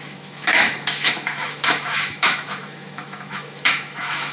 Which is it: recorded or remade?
remade